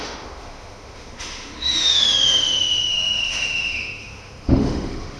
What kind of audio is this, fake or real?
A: fake